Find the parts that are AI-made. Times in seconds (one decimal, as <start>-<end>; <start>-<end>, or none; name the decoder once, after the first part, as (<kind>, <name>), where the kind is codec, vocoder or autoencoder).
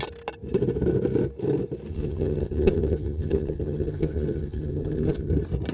1.9-5.3 (vocoder, HiFi-GAN)